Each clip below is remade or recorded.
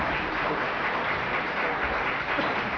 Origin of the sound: remade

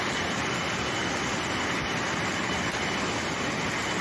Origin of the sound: recorded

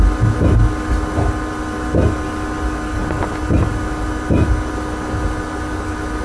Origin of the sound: recorded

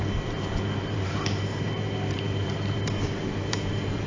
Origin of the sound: remade